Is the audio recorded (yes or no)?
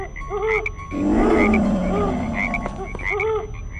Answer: yes